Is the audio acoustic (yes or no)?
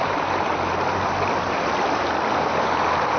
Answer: yes